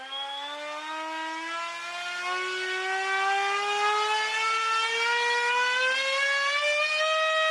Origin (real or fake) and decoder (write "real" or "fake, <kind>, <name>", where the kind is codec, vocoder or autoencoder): real